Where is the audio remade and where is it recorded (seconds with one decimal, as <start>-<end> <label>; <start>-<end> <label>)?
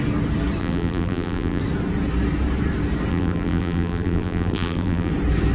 0.0-0.6 recorded; 0.6-1.6 remade; 1.6-3.1 recorded; 3.1-5.1 remade; 5.1-5.5 recorded